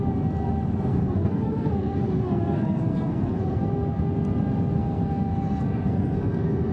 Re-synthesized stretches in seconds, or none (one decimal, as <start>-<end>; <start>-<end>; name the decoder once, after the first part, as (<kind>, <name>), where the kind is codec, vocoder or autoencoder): 0.9-4.0 (codec, SNAC); 4.8-6.7